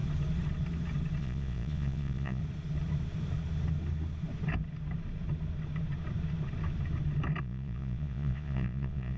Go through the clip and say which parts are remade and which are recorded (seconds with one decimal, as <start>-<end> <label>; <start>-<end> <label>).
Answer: 0.0-1.2 recorded; 1.2-2.4 remade; 2.4-7.4 recorded; 7.4-9.2 remade